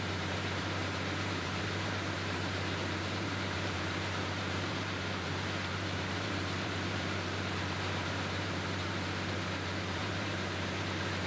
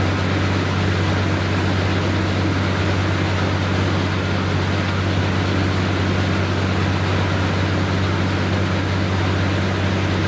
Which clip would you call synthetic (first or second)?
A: first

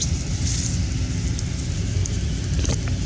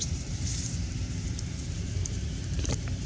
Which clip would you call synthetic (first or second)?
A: second